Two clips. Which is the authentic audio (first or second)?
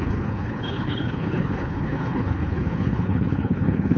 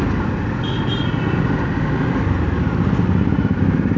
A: second